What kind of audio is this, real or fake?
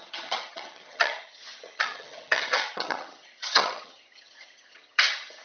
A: fake